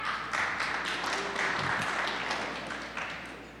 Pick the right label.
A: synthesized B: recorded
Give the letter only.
B